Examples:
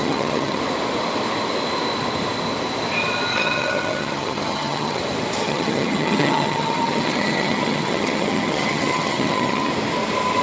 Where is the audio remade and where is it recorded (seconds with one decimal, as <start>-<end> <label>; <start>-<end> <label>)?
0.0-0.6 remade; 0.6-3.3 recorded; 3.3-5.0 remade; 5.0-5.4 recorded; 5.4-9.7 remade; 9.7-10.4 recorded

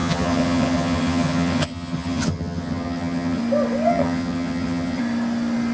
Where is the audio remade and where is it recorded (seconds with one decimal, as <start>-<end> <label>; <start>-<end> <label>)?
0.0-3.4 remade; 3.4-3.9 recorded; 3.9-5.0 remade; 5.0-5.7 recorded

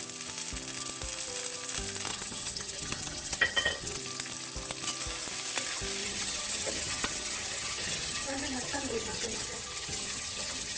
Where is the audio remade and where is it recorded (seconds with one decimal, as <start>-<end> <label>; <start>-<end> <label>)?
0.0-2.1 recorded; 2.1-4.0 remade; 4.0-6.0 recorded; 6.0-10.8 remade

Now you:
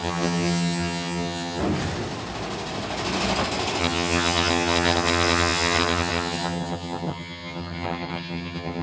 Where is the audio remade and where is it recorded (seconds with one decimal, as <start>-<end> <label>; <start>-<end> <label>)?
0.0-1.6 remade; 1.6-3.8 recorded; 3.8-8.8 remade

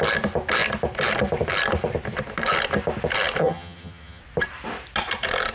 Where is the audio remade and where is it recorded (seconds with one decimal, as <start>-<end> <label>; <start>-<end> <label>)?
0.0-3.4 recorded; 3.4-4.2 remade; 4.2-5.5 recorded

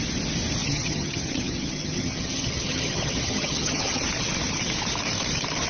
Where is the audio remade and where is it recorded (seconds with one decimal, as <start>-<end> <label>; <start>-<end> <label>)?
0.0-0.6 recorded; 0.6-4.0 remade; 4.0-5.7 recorded

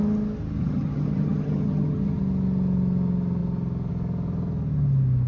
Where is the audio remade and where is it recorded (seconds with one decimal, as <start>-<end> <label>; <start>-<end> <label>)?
0.0-0.6 recorded; 0.6-2.2 remade; 2.2-5.3 recorded